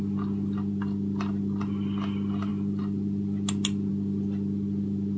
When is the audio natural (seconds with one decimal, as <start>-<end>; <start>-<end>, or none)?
0.0-5.2